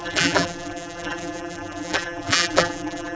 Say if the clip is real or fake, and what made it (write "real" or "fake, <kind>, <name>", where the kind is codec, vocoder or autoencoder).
fake, vocoder, BigVGAN v2